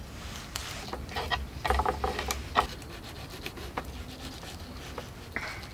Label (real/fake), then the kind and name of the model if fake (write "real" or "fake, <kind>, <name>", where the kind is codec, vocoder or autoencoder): real